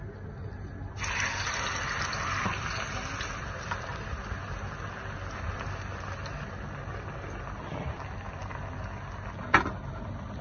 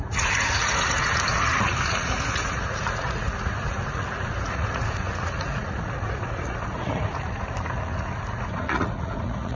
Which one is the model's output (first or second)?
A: second